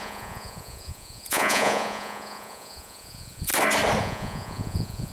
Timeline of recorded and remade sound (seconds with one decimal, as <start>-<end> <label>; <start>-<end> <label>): 0.0-3.5 remade; 3.5-4.0 recorded; 4.0-5.1 remade